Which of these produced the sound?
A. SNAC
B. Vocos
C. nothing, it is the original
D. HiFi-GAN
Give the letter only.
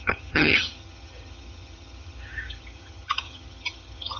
D